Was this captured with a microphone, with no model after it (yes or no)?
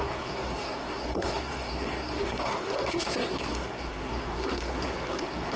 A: no